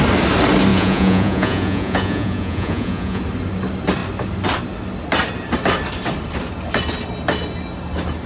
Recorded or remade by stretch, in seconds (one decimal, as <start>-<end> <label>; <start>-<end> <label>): 0.0-0.7 recorded; 0.7-3.2 remade; 3.2-8.3 recorded